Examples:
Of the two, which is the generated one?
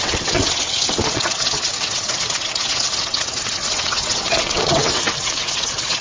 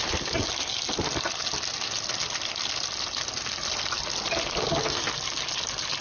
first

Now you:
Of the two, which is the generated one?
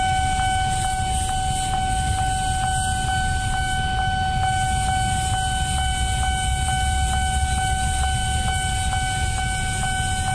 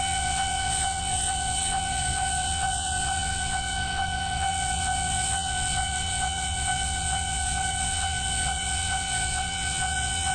second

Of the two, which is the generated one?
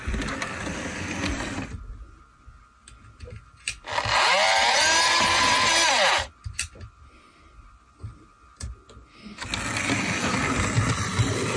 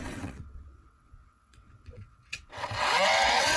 second